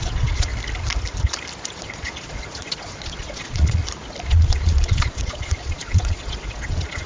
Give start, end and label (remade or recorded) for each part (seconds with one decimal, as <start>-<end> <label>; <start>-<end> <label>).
0.0-0.5 remade; 0.5-1.7 recorded; 1.7-3.8 remade; 3.8-4.3 recorded; 4.3-7.1 remade